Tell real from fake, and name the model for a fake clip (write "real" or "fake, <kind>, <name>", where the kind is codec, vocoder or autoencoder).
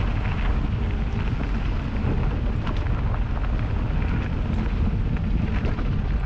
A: real